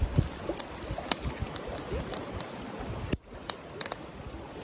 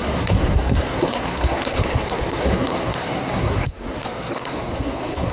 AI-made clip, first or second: second